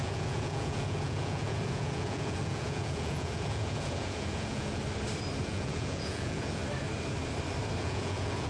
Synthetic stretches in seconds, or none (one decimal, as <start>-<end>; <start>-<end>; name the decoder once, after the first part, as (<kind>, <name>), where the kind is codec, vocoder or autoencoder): 0.0-4.8 (vocoder, Vocos); 5.4-6.6; 7.8-8.5